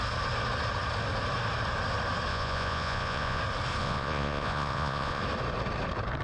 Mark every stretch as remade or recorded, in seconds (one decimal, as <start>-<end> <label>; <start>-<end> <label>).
0.0-2.3 recorded; 2.3-3.4 remade; 3.4-3.8 recorded; 3.8-5.2 remade; 5.2-6.2 recorded